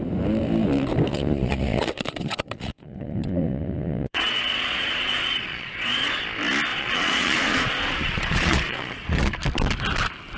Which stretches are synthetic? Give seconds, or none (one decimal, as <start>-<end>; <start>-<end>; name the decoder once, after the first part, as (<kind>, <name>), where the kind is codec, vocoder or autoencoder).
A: 1.1-6.2 (vocoder, Vocos); 6.7-9.3